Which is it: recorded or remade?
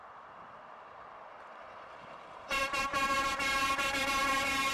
remade